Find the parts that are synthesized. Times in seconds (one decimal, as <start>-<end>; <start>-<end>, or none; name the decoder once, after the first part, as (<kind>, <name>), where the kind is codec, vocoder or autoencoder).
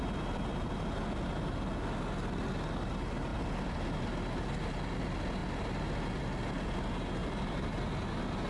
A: 0.0-1.3 (vocoder, BigVGAN v2); 3.3-4.0; 7.2-7.8